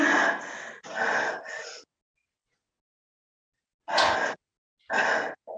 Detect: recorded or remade recorded